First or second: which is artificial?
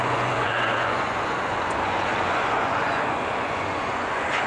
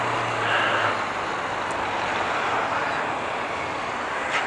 first